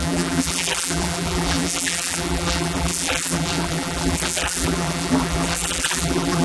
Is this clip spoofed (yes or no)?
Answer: yes